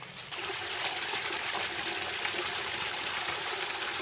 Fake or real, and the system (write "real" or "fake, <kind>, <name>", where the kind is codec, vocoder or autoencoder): fake, vocoder, BigVGAN v2